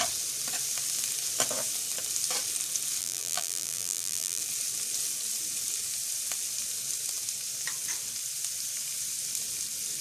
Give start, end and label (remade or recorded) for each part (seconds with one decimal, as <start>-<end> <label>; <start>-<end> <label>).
0.0-3.0 recorded; 3.0-4.4 remade; 4.4-10.0 recorded